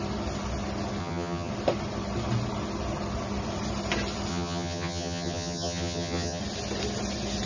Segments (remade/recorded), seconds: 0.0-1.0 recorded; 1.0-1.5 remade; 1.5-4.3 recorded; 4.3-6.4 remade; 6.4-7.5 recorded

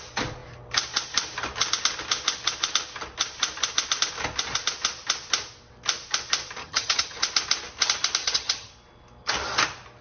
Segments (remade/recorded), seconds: 0.0-6.6 recorded; 6.6-7.2 remade; 7.2-8.2 recorded; 8.2-8.7 remade; 8.7-10.0 recorded

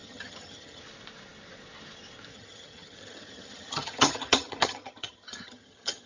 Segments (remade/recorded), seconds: 0.0-0.8 remade; 0.8-2.3 recorded; 2.3-6.1 remade

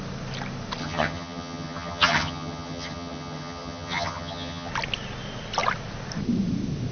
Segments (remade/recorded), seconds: 0.0-0.8 recorded; 0.8-4.7 remade; 4.7-6.9 recorded

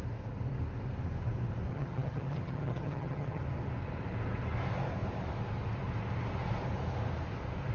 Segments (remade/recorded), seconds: 0.0-1.7 recorded; 1.7-3.4 remade; 3.4-7.7 recorded

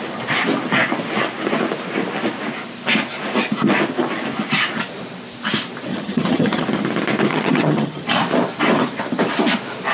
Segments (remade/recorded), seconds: 0.0-5.9 recorded; 5.9-6.6 remade; 6.6-7.3 recorded; 7.3-8.0 remade; 8.0-9.9 recorded

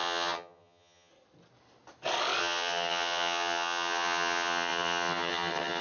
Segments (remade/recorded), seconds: 0.0-1.1 remade; 1.1-2.4 recorded; 2.4-5.8 remade